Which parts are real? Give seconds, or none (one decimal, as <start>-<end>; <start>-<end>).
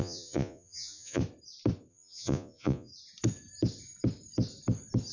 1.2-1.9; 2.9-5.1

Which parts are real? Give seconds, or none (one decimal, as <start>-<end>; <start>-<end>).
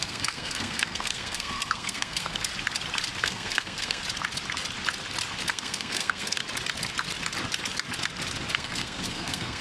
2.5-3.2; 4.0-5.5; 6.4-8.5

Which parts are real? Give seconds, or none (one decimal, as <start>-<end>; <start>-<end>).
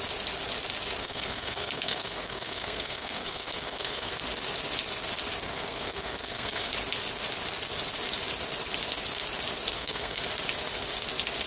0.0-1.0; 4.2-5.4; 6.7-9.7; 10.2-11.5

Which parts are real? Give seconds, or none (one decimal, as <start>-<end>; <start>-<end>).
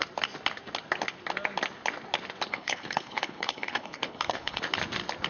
0.0-2.5; 4.6-5.3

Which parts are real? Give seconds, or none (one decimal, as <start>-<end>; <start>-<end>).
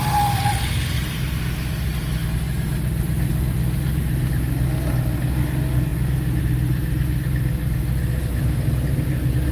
0.0-9.5